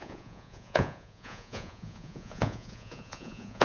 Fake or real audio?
fake